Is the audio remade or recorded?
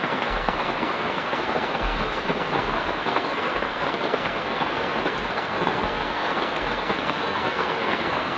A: remade